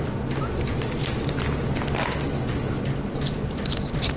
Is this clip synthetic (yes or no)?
no